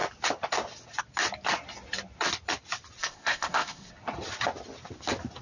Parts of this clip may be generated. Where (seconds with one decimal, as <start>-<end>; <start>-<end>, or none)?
3.0-3.9